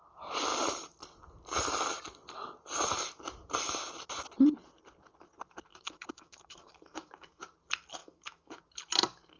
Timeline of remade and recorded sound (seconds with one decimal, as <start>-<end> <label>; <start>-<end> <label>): 0.0-5.7 recorded; 5.7-7.4 remade; 7.4-8.0 recorded; 8.0-8.6 remade; 8.6-9.4 recorded